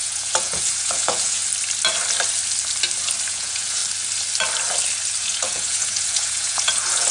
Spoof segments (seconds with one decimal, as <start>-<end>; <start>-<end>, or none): 0.0-1.4; 3.3-3.8; 5.2-7.1

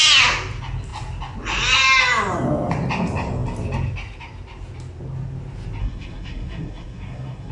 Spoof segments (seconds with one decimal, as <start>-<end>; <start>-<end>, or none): 5.8-7.5